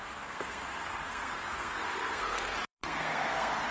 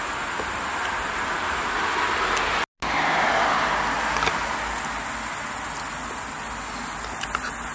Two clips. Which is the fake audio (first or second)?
first